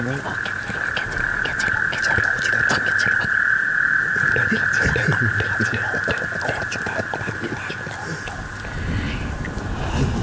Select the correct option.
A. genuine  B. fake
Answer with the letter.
A